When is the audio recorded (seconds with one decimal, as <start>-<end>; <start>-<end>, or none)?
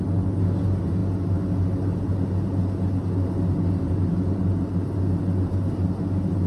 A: 0.0-6.5